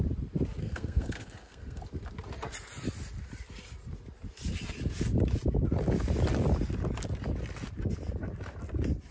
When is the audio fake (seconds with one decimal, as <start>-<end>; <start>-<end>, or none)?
0.6-1.8